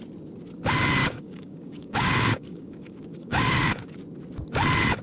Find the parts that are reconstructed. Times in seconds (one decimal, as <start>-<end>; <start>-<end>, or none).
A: 1.0-4.0